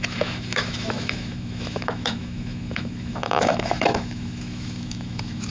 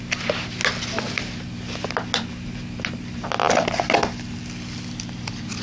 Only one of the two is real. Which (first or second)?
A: second